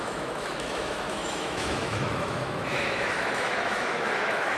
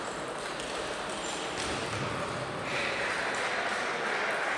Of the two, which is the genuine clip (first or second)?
second